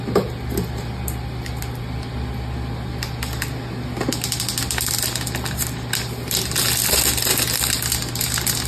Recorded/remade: recorded